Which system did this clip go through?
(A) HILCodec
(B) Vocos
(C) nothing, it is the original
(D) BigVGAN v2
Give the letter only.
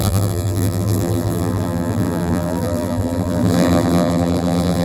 D